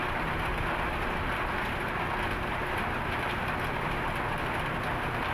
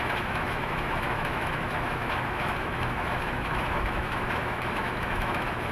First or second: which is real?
first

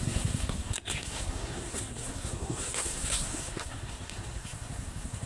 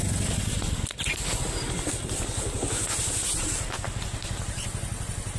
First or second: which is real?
second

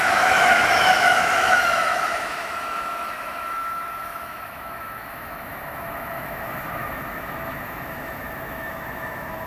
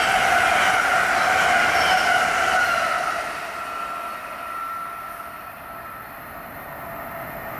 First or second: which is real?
second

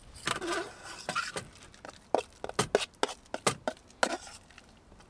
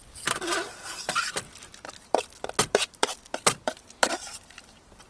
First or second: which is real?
first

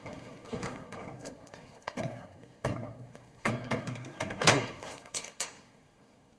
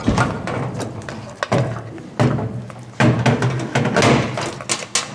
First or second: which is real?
second